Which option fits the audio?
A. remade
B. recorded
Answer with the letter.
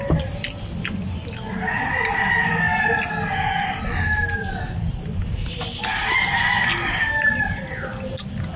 B